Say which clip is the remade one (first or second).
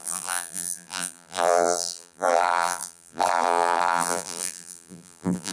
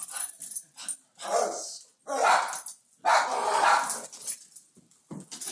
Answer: first